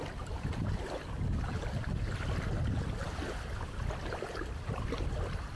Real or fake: real